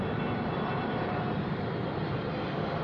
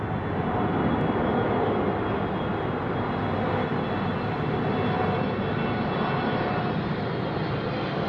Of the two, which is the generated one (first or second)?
first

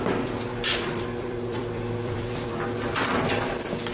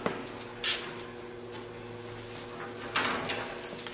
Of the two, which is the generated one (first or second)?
first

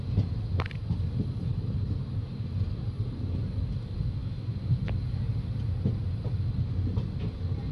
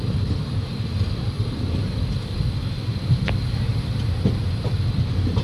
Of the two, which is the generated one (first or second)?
second